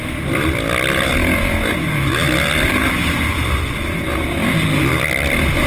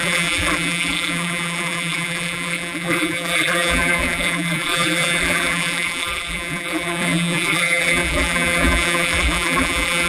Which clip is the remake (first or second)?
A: second